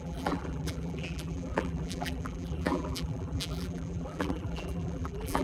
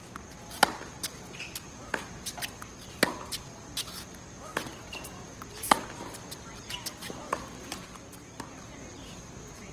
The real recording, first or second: second